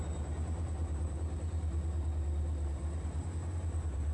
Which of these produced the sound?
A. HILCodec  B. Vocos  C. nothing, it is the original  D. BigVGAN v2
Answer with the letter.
D